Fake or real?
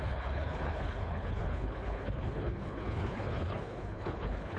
fake